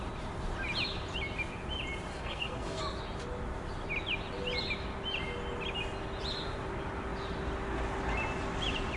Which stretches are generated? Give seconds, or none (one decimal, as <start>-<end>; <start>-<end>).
2.1-2.8